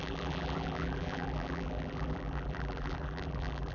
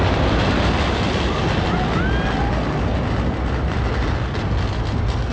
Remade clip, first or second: first